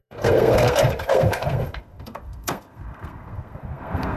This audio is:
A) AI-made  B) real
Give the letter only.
A